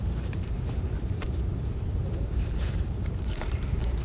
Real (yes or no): no